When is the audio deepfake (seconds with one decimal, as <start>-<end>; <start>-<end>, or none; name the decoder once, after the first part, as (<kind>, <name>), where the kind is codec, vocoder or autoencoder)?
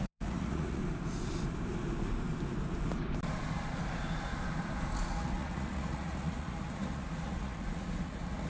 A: 0.0-0.8 (vocoder, Vocos); 5.0-8.5